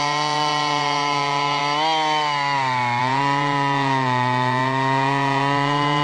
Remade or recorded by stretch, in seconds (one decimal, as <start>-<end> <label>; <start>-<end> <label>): 0.0-1.6 remade; 1.6-3.0 recorded; 3.0-6.0 remade